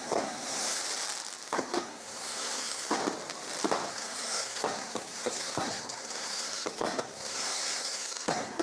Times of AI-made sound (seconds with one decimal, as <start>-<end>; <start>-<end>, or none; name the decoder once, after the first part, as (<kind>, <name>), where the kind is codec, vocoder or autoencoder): 0.0-0.8 (codec, SNAC); 1.5-3.0; 3.9-8.6